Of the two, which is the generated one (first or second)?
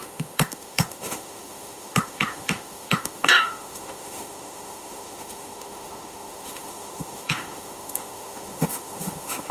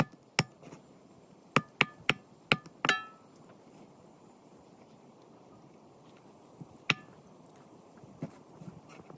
first